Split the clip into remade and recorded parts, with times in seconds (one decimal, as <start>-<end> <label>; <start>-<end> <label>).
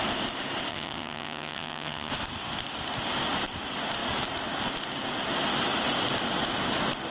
0.0-0.7 recorded; 0.7-2.1 remade; 2.1-7.1 recorded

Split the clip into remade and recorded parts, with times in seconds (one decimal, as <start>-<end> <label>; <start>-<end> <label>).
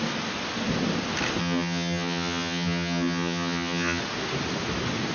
0.0-1.4 recorded; 1.4-4.0 remade; 4.0-5.1 recorded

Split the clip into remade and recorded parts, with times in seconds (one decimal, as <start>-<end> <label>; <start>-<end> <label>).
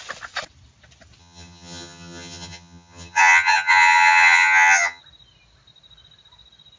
0.0-1.2 recorded; 1.2-5.0 remade; 5.0-6.8 recorded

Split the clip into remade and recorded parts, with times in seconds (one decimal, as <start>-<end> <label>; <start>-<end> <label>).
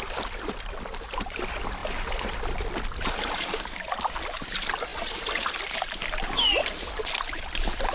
0.0-7.9 recorded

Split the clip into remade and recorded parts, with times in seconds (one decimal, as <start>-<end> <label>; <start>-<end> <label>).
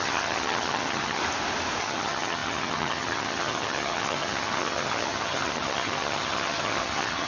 0.0-1.2 remade; 1.2-1.8 recorded; 1.8-7.3 remade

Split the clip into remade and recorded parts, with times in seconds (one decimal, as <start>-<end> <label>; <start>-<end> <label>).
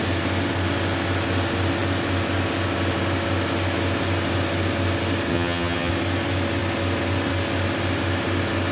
0.0-5.3 recorded; 5.3-5.9 remade; 5.9-8.7 recorded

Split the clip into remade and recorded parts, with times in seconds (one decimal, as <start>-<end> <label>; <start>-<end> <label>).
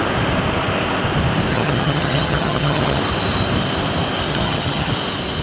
0.0-1.5 recorded; 1.5-3.0 remade; 3.0-4.3 recorded; 4.3-4.9 remade; 4.9-5.4 recorded